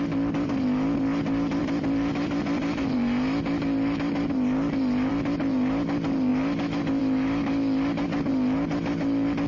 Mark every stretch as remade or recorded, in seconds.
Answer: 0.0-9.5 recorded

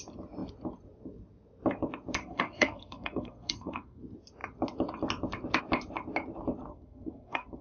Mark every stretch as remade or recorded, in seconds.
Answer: 0.0-2.2 recorded; 2.2-4.0 remade; 4.0-6.7 recorded; 6.7-7.6 remade